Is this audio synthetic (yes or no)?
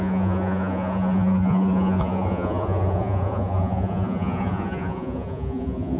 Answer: yes